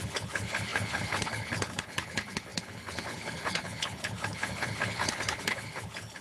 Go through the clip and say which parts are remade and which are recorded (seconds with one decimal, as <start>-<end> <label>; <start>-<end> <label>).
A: 0.0-6.2 remade